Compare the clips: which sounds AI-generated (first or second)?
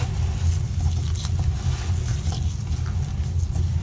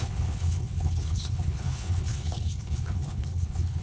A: second